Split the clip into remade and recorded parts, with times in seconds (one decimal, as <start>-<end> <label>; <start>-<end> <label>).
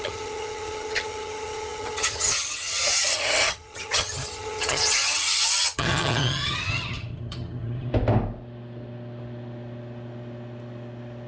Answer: 0.0-7.9 remade; 7.9-11.3 recorded